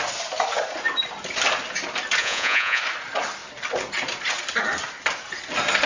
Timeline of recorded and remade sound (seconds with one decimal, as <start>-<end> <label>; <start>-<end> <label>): 0.0-2.2 recorded; 2.2-2.8 remade; 2.8-5.9 recorded